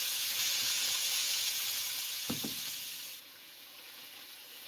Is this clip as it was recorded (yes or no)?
no